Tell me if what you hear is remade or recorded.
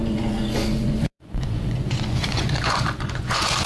remade